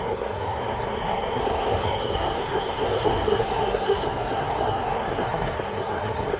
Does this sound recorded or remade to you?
remade